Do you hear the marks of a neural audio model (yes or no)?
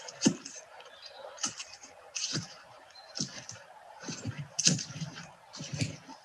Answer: yes